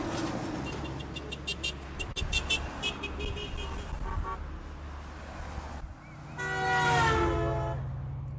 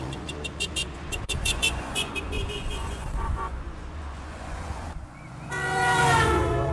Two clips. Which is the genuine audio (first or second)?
first